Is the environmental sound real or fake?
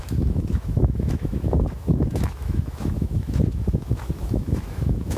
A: fake